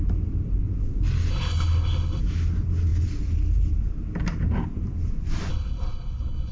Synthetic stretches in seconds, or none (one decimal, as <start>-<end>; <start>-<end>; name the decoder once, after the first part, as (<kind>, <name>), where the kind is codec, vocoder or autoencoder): 1.3-2.2 (codec, HILCodec); 5.5-6.5

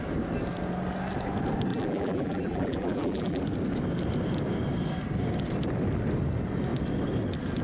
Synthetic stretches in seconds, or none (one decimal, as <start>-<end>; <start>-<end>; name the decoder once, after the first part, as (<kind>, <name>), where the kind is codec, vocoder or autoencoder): 1.7-3.4 (vocoder, BigVGAN v2)

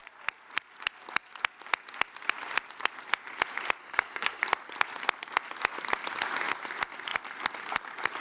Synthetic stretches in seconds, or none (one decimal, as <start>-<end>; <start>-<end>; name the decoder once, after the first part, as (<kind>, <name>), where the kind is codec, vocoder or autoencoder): 3.8-4.4 (codec, SNAC)